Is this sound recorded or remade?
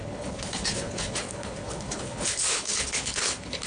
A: remade